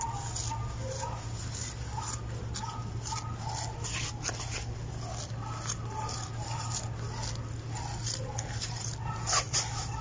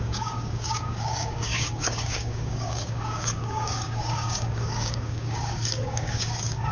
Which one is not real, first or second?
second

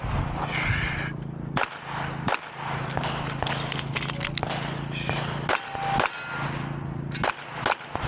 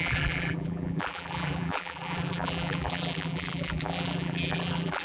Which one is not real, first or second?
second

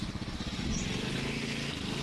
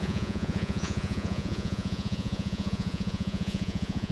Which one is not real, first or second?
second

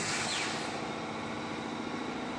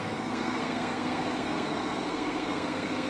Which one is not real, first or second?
second